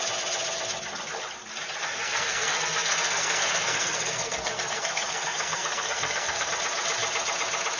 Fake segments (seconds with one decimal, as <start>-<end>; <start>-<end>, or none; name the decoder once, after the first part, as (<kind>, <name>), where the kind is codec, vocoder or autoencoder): 1.8-6.5 (codec, SNAC)